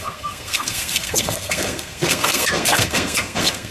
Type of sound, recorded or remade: remade